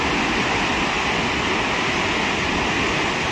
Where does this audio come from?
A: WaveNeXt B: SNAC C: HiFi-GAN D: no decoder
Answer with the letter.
D